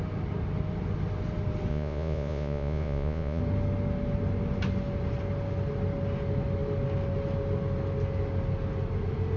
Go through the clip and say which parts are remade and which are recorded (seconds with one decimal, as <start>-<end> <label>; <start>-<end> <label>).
0.0-1.7 recorded; 1.7-3.4 remade; 3.4-9.4 recorded